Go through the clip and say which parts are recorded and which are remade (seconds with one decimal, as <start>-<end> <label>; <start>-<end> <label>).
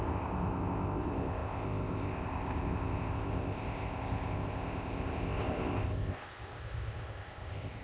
0.0-7.8 remade